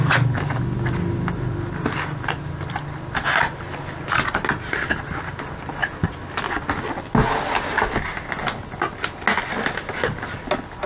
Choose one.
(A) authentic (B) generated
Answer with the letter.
A